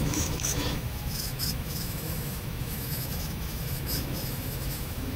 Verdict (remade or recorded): remade